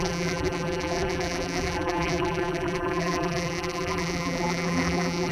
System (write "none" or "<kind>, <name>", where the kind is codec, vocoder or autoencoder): vocoder, BigVGAN v2